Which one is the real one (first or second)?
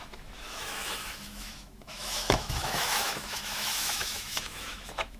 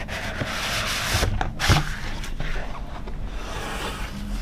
second